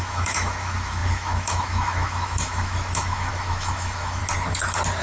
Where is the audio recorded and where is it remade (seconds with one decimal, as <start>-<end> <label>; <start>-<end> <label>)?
0.0-4.2 remade; 4.2-5.0 recorded